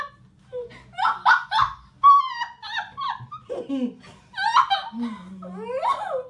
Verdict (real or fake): real